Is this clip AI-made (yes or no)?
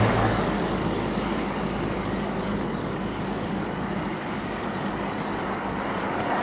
yes